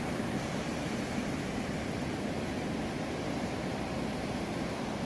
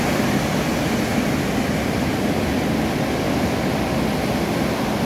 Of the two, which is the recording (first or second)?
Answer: second